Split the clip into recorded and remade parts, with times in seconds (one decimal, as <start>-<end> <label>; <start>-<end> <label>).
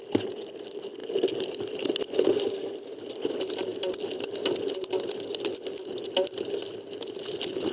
0.0-7.7 recorded